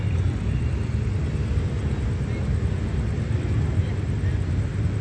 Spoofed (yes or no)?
no